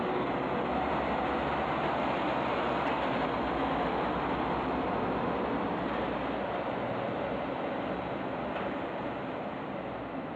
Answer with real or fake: real